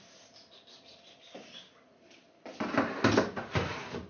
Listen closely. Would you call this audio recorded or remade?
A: recorded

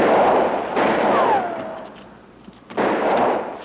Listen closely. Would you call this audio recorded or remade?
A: recorded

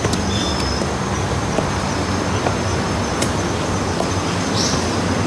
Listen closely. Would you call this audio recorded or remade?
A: remade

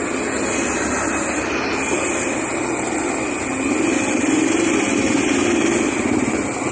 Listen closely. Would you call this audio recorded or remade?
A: recorded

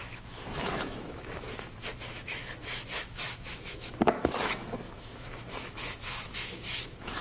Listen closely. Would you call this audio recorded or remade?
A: remade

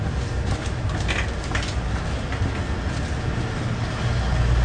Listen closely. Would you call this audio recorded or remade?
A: recorded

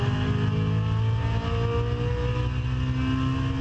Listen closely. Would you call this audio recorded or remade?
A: recorded